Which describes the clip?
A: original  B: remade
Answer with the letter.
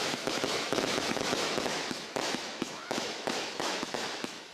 B